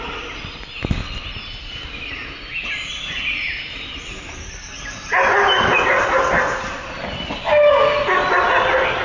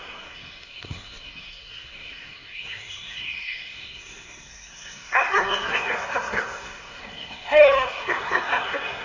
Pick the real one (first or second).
first